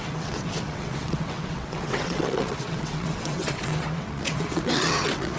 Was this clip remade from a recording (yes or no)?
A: yes